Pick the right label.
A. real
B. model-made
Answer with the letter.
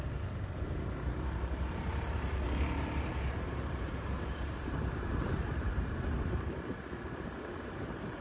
B